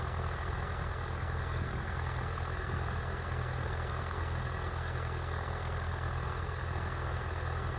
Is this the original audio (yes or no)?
no